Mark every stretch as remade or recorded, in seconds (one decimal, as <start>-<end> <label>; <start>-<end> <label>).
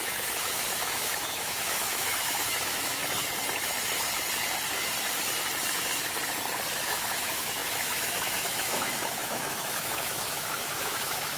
0.0-3.0 remade; 3.0-6.8 recorded; 6.8-11.4 remade